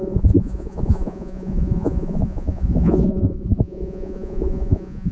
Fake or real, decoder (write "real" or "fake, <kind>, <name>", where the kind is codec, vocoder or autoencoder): fake, vocoder, Vocos